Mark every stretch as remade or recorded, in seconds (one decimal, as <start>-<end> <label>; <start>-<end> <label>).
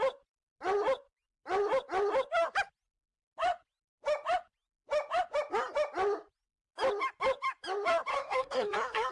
0.0-8.1 recorded; 8.1-9.1 remade